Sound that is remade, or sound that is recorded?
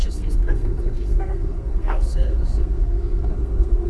remade